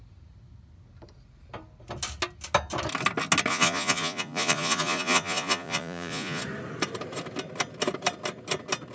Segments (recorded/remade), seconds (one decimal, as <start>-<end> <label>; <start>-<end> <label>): 0.0-3.5 recorded; 3.5-6.4 remade; 6.4-8.9 recorded